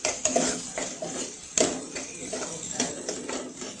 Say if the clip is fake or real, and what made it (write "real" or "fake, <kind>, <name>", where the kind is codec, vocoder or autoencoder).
fake, vocoder, BigVGAN v2